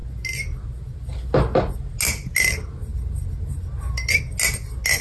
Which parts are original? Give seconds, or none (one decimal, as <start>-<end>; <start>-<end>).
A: 0.0-5.0